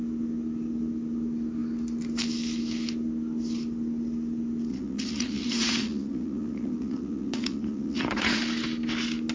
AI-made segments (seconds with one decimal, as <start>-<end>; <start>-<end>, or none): 4.7-8.4